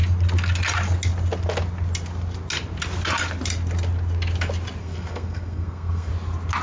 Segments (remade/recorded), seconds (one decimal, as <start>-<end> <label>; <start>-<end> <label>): 0.0-4.8 recorded; 4.8-6.1 remade; 6.1-6.6 recorded